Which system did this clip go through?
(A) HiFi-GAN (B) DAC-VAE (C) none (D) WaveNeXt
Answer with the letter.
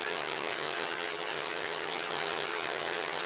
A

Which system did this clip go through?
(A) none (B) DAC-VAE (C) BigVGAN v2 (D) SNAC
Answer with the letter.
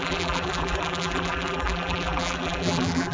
C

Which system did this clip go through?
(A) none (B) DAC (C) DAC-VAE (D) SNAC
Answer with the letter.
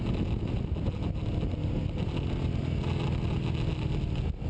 A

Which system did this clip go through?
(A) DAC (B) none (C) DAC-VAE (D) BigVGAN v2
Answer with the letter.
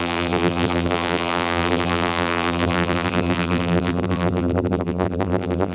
D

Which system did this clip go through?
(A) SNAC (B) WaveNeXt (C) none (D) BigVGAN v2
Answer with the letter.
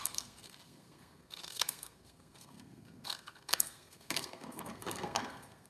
A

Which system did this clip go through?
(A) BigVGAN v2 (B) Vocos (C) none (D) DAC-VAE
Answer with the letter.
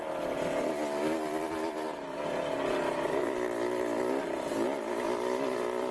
C